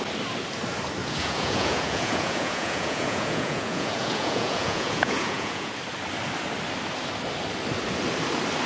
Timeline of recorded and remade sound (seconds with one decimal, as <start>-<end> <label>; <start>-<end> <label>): 0.0-1.0 recorded; 1.0-5.7 remade; 5.7-8.7 recorded